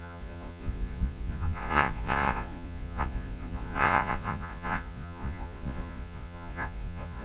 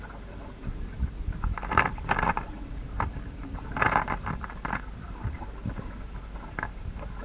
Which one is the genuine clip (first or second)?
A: second